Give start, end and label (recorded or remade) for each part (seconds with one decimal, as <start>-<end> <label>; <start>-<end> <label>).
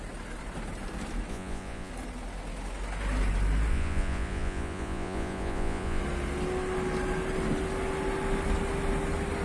0.0-1.3 recorded; 1.3-1.9 remade; 1.9-3.7 recorded; 3.7-6.0 remade; 6.0-9.4 recorded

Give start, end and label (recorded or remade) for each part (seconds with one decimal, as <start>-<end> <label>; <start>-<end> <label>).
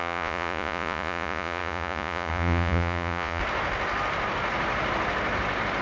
0.0-3.4 remade; 3.4-5.8 recorded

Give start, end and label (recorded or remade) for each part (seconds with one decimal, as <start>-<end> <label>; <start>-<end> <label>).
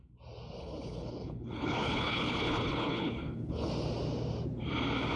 0.0-0.6 recorded; 0.6-3.7 remade; 3.7-5.2 recorded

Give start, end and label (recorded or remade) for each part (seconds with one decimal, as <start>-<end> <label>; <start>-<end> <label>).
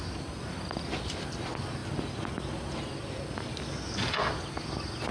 0.0-5.1 recorded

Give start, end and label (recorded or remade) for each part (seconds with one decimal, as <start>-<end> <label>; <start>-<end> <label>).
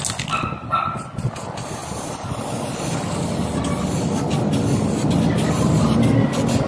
0.0-6.7 recorded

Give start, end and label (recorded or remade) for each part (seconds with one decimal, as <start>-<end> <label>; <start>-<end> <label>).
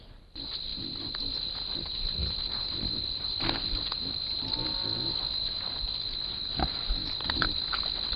0.0-8.2 recorded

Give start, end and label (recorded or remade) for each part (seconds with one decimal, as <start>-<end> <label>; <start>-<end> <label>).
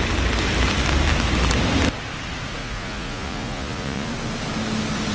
0.0-2.6 recorded; 2.6-4.1 remade; 4.1-5.1 recorded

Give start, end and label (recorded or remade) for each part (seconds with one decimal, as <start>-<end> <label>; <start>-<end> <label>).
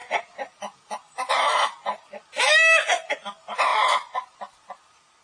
0.0-5.2 recorded